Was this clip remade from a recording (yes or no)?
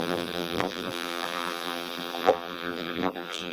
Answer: yes